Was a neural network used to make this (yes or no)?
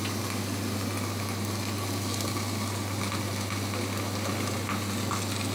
no